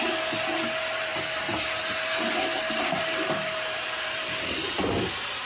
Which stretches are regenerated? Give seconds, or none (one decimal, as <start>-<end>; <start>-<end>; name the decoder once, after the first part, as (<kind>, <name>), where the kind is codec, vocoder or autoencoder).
1.1-4.4 (vocoder, BigVGAN v2)